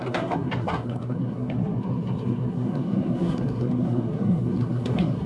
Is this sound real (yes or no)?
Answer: no